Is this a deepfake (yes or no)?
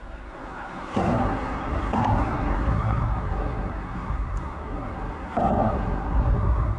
yes